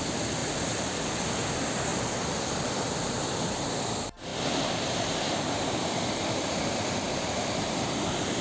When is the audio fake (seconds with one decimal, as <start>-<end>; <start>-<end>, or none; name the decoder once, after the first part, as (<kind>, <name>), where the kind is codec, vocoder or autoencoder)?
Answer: 4.3-6.7 (vocoder, BigVGAN v2)